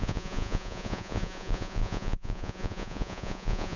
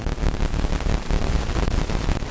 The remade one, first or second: first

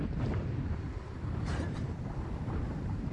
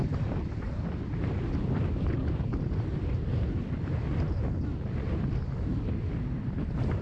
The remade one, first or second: first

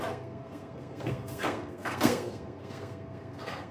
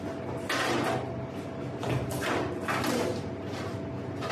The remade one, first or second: first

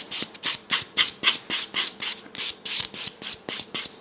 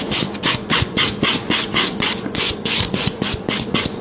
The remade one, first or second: second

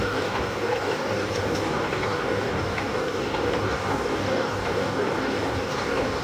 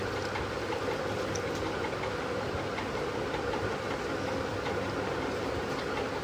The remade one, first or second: first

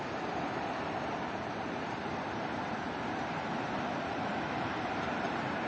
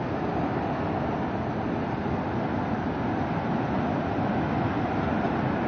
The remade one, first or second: first